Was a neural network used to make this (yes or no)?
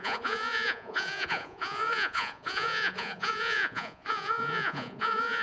yes